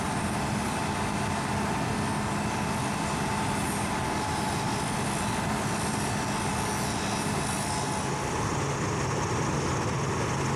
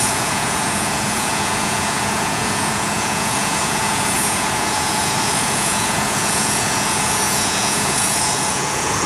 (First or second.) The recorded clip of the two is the first